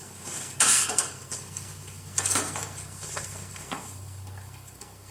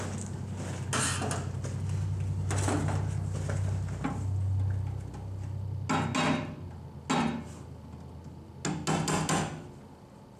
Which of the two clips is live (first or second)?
second